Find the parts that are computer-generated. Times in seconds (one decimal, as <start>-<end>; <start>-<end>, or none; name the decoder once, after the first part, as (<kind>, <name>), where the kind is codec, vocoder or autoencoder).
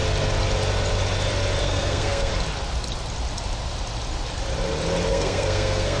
1.6-2.3 (codec, SNAC); 5.1-6.0